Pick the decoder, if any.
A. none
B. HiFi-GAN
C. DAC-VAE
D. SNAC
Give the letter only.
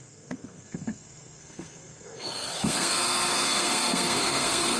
D